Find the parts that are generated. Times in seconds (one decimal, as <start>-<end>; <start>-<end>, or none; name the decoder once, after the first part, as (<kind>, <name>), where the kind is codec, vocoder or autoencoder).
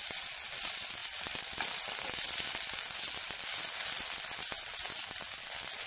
none